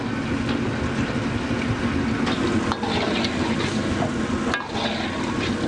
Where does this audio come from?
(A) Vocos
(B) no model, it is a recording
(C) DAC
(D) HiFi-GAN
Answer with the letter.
B